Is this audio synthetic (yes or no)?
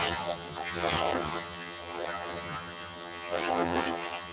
yes